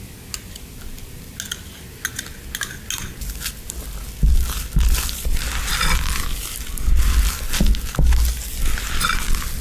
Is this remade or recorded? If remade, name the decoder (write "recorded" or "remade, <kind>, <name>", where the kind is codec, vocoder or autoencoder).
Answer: recorded